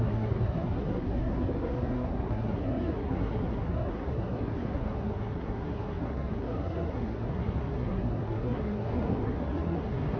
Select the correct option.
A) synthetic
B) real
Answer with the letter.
A